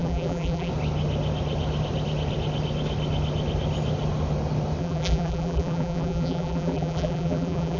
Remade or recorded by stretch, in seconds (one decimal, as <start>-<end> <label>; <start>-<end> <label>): 0.0-0.7 remade; 0.7-4.8 recorded; 4.8-7.8 remade